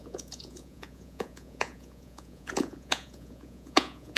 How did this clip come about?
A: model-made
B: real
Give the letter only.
A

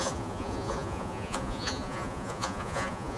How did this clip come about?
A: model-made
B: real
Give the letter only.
A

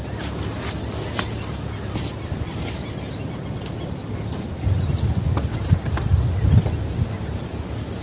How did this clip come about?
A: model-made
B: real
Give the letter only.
B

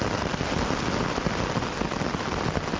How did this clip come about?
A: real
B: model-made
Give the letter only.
A